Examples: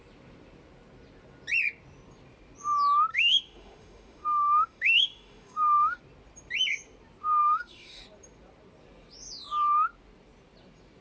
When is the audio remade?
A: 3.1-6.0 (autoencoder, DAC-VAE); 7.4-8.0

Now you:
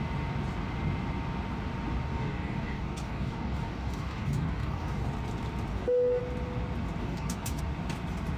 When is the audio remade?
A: 2.1-5.1 (codec, DAC); 5.7-6.2; 7.0-7.6

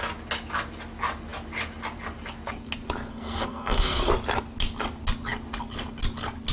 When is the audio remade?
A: 3.1-4.1 (codec, SNAC)

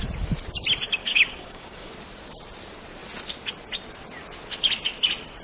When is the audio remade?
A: 1.0-1.9 (codec, DAC)

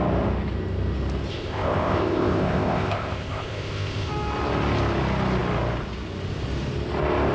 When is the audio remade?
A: 1.3-4.1 (codec, ZipCodec)